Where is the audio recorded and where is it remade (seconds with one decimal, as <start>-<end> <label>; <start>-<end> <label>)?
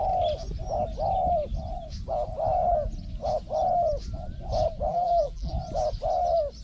0.0-4.9 recorded; 4.9-5.5 remade; 5.5-6.6 recorded